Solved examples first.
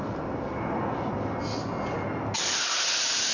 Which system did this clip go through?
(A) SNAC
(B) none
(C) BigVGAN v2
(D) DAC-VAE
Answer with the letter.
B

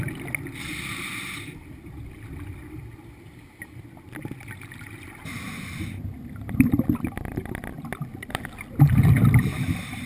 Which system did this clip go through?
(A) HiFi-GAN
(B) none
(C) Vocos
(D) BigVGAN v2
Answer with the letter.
B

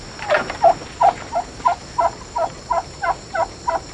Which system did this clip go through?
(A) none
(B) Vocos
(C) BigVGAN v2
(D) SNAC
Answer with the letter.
A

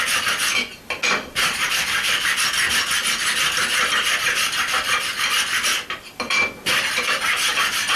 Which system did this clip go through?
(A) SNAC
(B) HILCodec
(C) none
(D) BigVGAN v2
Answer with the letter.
C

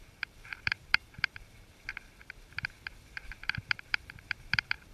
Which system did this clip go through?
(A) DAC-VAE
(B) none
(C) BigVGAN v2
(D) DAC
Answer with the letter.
C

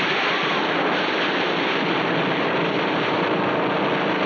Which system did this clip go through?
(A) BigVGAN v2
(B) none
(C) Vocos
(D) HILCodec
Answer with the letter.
B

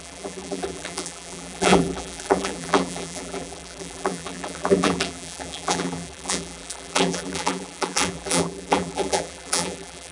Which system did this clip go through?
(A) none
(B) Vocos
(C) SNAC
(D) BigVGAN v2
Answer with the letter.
D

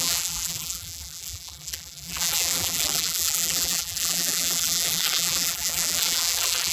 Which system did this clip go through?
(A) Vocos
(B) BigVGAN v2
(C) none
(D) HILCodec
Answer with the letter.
B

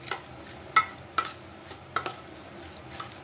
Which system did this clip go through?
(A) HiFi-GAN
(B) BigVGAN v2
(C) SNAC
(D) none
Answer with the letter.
D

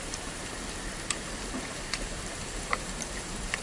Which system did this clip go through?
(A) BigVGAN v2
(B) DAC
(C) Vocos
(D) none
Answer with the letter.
A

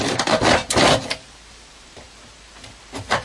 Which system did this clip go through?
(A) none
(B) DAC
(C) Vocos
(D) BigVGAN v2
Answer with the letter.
D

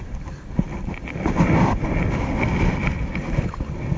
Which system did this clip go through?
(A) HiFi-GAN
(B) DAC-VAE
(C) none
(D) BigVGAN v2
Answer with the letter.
C